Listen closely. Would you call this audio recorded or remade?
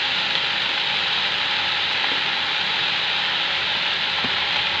remade